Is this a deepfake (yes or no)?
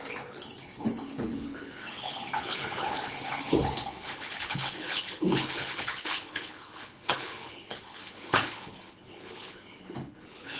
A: yes